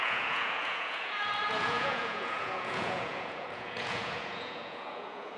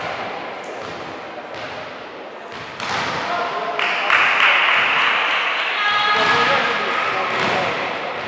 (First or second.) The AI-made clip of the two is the first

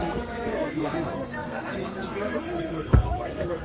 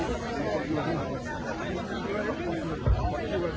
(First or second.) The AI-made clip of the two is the first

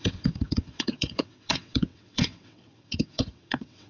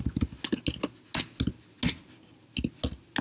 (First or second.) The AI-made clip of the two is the first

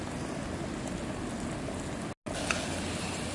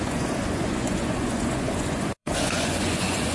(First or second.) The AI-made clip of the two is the second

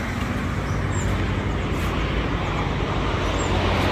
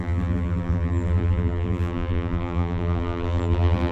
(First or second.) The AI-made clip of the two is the second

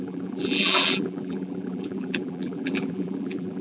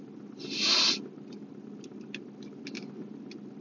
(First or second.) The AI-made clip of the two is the first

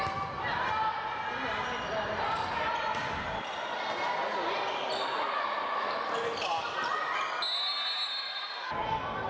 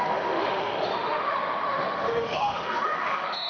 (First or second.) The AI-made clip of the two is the second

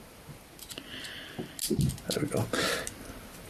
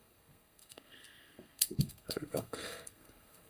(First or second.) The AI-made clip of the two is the second